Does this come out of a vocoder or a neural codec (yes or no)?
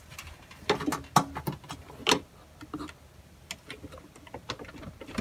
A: no